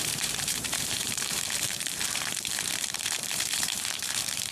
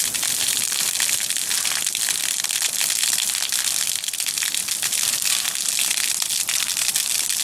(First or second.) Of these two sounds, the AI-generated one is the first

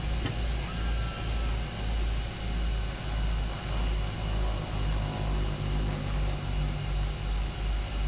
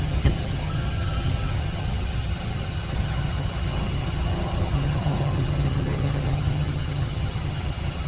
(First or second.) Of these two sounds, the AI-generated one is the second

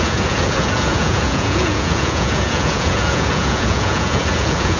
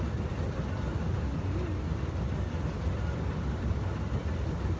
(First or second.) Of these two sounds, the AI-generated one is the first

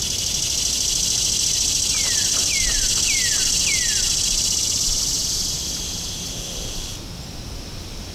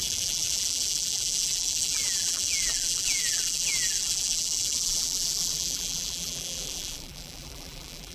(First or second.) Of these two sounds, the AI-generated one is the second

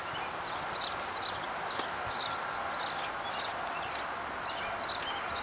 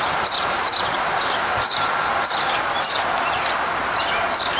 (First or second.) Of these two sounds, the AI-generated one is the second